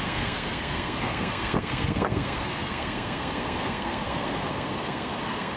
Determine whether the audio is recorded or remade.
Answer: remade